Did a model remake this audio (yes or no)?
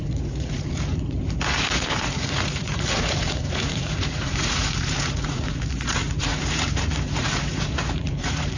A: yes